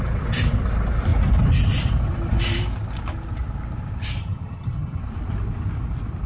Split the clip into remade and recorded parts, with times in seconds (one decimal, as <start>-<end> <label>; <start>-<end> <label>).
0.0-4.2 recorded; 4.2-5.0 remade; 5.0-6.3 recorded